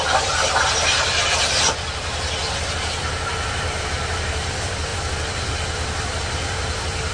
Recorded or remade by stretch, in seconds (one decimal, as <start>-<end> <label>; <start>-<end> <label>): 0.0-7.1 remade

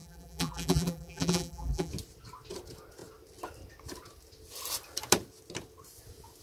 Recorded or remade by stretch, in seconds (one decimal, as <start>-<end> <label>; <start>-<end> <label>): 0.0-1.9 remade; 1.9-6.4 recorded